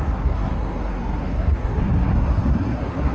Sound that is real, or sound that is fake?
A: fake